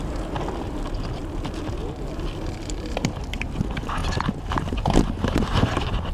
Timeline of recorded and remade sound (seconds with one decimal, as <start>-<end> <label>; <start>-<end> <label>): 0.0-6.1 recorded